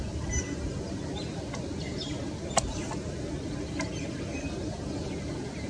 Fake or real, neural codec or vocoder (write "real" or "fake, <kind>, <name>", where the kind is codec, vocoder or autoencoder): real